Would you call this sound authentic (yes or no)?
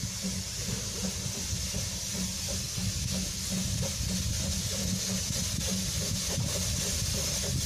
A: yes